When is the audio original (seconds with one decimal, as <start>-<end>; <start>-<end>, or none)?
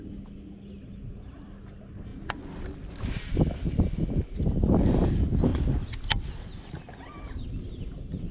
0.0-8.3